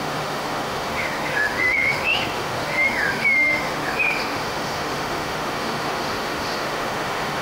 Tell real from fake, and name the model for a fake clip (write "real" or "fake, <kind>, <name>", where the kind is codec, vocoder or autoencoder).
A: fake, autoencoder, DAC-VAE